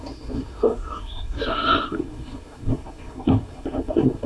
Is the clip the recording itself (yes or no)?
no